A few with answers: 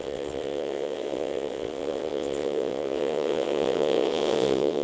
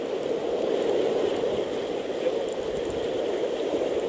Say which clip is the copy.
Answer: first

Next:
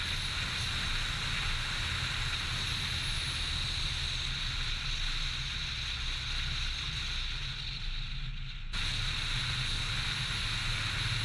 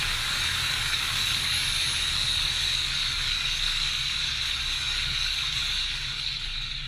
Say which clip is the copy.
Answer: second